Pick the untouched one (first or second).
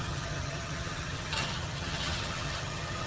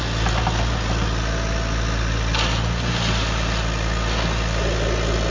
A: second